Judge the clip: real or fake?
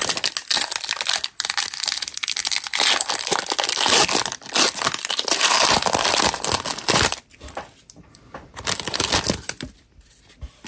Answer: real